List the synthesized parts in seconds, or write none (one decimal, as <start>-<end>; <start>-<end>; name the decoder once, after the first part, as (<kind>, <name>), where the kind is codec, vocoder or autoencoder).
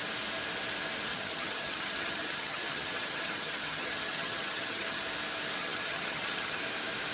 1.1-5.0 (vocoder, HiFi-GAN); 5.6-6.6